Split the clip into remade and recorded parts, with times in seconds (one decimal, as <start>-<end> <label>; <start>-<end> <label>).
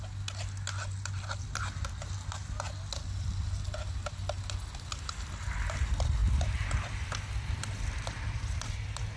0.0-9.2 recorded